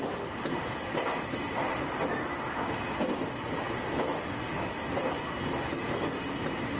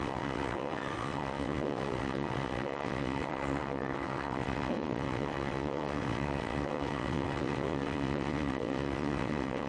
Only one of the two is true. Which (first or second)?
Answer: first